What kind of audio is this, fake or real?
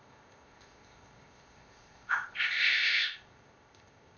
fake